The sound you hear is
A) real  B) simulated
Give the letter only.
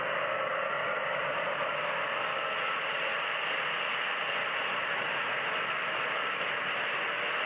A